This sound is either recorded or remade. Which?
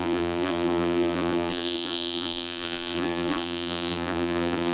remade